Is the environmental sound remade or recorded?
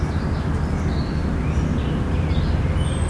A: recorded